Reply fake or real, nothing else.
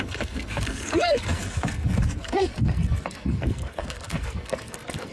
fake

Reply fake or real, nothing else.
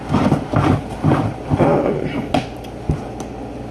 real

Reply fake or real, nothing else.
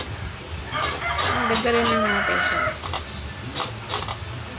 real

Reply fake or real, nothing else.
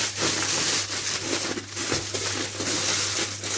real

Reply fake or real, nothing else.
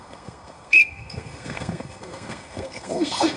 fake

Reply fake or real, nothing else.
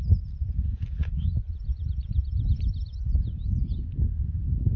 real